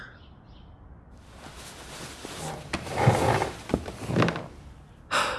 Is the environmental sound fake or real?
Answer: real